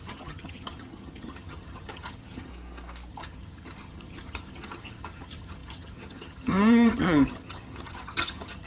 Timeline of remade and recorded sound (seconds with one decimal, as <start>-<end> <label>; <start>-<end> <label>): 0.0-2.5 remade; 2.5-3.1 recorded; 3.1-8.7 remade